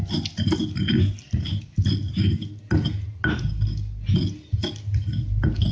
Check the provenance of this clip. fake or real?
real